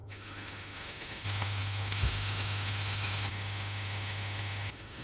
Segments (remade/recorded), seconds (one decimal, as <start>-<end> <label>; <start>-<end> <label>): 0.0-5.0 remade